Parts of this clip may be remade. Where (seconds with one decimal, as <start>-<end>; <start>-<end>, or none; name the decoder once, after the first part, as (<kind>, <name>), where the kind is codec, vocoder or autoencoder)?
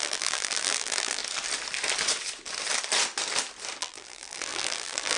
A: 0.0-1.2 (vocoder, BigVGAN v2); 3.8-5.2